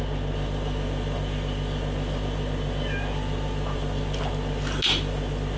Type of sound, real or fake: real